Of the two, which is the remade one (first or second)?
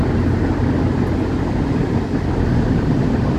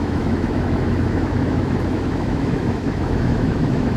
second